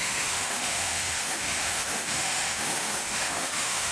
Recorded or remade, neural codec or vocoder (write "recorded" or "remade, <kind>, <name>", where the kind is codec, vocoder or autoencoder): remade, autoencoder, DAC-VAE